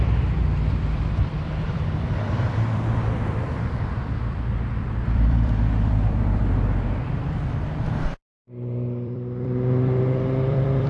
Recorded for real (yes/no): no